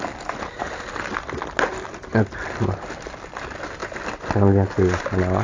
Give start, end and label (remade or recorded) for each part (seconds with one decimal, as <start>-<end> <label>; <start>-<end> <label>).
0.0-5.4 recorded